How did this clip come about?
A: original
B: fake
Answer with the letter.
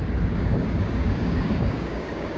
B